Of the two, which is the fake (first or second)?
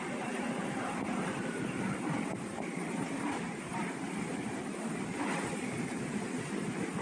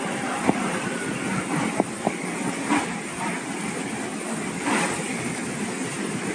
first